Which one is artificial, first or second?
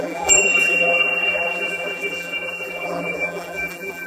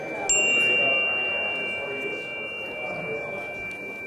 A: first